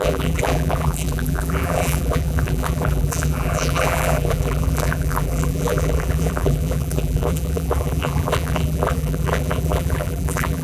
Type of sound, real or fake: fake